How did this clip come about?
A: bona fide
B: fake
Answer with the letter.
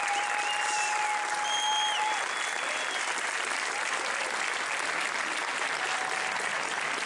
A